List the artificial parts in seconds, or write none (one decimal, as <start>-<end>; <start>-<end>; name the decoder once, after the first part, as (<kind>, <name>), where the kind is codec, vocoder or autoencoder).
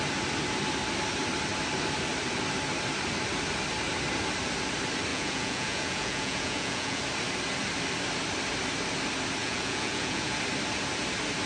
5.1-7.0 (vocoder, Vocos); 9.4-10.4